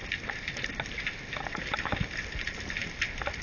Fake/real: real